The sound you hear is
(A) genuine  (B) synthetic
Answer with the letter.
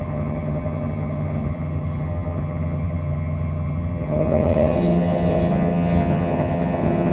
B